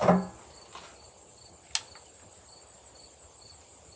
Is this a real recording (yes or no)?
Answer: yes